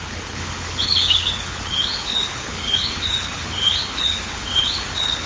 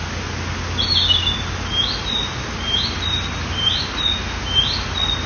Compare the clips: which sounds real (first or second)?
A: second